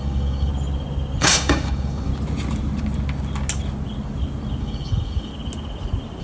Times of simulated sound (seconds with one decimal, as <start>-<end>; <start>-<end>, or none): 0.0-0.5; 1.2-2.1; 4.6-5.3